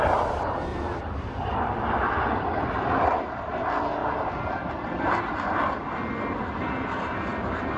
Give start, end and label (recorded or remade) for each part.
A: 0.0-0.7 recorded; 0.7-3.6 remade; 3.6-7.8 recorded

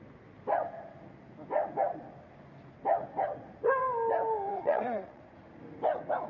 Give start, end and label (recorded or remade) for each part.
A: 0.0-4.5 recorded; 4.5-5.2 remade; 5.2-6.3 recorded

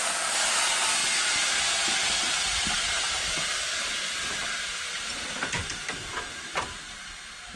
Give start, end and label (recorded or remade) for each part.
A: 0.0-7.6 recorded